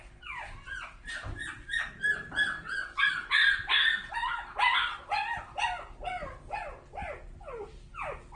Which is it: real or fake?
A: real